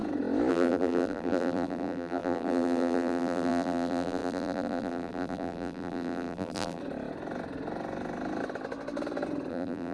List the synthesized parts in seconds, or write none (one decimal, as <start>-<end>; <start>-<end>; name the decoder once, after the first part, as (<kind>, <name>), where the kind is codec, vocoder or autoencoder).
0.5-6.8 (vocoder, BigVGAN v2); 9.5-9.9